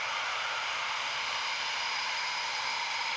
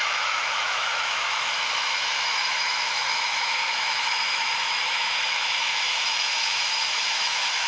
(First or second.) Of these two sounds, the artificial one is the second